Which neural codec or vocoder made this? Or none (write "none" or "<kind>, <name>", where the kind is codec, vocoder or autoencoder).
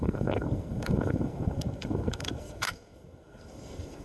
codec, SNAC